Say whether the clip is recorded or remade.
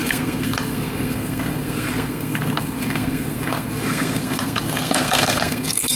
remade